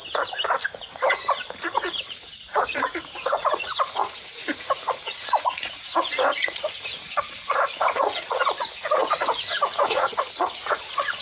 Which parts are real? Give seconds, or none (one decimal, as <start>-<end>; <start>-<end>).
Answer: 0.0-0.6